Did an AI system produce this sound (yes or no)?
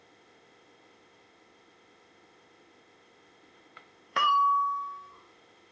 yes